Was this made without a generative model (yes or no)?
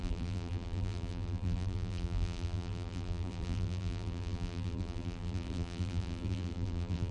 no